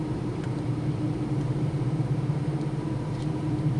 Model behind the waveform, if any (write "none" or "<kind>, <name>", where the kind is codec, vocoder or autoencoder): vocoder, BigVGAN v2